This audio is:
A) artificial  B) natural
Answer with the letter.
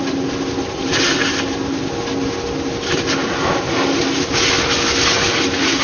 B